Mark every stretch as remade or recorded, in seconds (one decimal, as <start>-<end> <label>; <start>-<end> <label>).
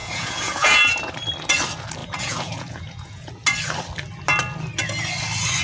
0.0-1.1 remade; 1.1-2.0 recorded; 2.0-3.3 remade; 3.3-5.6 recorded